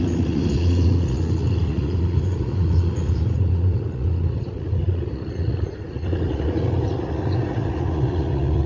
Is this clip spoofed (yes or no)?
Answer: yes